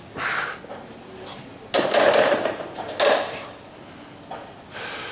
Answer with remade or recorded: recorded